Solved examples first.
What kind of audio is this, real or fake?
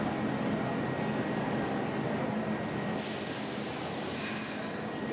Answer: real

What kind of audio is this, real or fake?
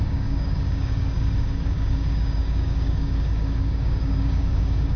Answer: fake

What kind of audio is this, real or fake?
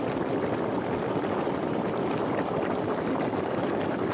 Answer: real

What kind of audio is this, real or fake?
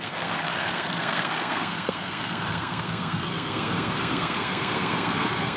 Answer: fake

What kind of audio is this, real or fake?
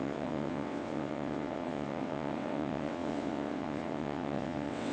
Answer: fake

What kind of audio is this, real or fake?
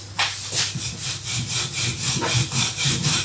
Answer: real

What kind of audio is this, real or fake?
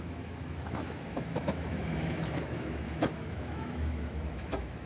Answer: fake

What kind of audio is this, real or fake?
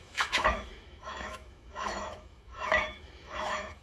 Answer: fake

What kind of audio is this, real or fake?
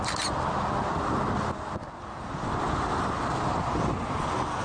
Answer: real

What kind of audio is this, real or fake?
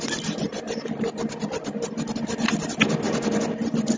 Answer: real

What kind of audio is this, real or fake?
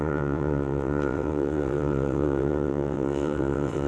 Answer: fake